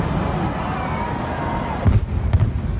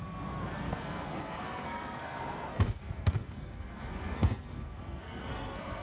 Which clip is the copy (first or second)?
second